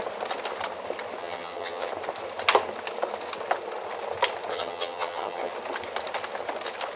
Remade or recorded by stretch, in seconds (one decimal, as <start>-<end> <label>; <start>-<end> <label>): 0.0-1.2 recorded; 1.2-1.9 remade; 1.9-4.5 recorded; 4.5-5.5 remade; 5.5-7.0 recorded